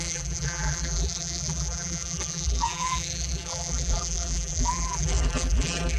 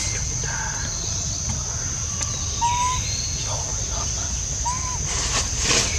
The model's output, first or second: first